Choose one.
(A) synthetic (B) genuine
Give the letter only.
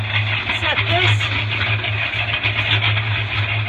B